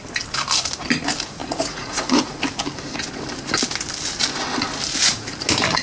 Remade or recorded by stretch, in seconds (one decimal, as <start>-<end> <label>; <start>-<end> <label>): 0.0-1.4 recorded; 1.4-2.4 remade; 2.4-5.8 recorded

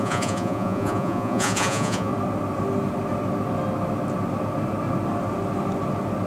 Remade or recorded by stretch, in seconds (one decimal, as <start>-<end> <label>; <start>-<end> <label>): 0.0-2.1 remade; 2.1-6.3 recorded

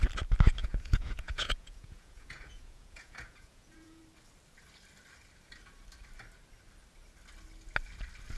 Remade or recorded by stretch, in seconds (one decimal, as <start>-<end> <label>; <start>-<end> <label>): 0.0-0.6 recorded; 0.6-4.0 remade; 4.0-8.4 recorded

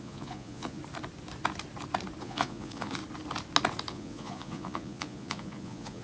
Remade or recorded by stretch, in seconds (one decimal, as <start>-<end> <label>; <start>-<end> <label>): 0.0-0.8 remade; 0.8-2.2 recorded; 2.2-3.0 remade; 3.0-3.9 recorded; 3.9-6.0 remade